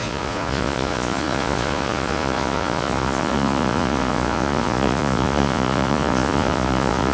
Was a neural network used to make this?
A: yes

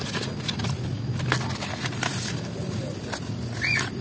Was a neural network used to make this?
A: no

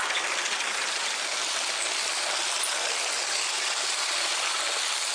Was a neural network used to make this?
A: no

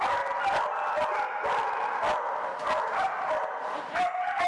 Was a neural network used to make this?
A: no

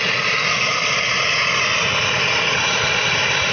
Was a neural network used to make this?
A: no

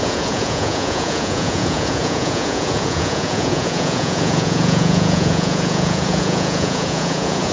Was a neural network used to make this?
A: yes